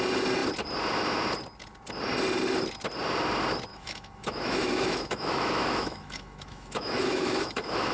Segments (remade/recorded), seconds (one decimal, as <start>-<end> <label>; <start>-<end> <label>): 0.0-3.7 recorded; 3.7-7.9 remade